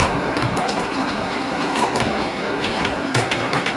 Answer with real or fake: fake